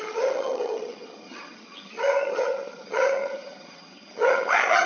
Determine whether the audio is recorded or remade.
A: remade